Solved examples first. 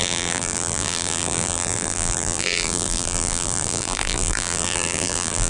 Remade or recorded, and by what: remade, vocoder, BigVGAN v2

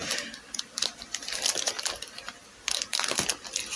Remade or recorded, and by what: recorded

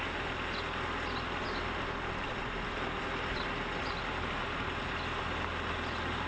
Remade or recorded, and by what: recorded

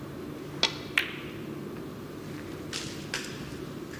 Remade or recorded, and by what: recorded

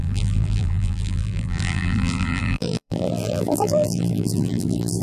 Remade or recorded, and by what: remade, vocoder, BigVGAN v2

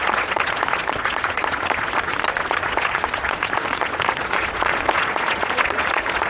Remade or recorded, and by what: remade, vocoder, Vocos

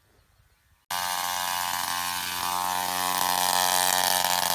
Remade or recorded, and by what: recorded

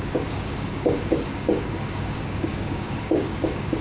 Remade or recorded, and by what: remade, codec, DAC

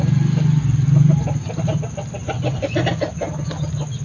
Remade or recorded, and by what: recorded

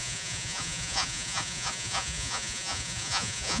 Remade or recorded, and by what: remade, vocoder, Vocos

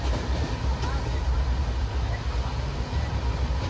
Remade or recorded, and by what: recorded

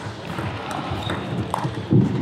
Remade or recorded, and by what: remade, vocoder, BigVGAN v2